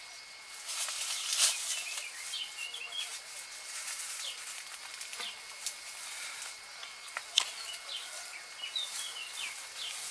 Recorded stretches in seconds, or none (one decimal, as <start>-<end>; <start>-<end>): 0.0-10.1